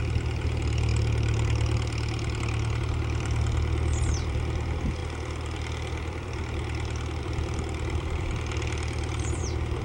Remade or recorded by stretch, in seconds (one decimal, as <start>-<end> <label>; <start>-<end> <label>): 0.0-0.9 remade; 0.9-2.8 recorded; 2.8-9.8 remade